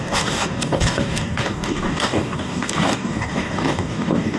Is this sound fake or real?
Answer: fake